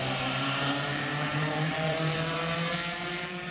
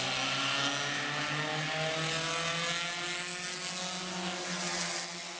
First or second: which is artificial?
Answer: first